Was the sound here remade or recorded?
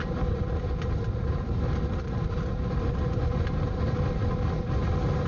recorded